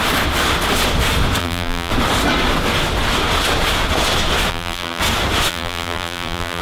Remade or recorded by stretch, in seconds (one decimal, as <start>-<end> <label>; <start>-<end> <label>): 0.0-1.4 recorded; 1.4-1.9 remade; 1.9-4.5 recorded; 4.5-5.0 remade; 5.0-5.5 recorded; 5.5-6.6 remade